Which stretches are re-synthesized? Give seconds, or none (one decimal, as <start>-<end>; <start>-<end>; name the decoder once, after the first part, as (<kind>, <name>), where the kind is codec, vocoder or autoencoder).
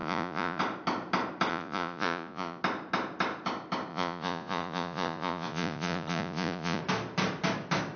0.0-0.6 (vocoder, Vocos); 1.5-2.6; 3.9-6.8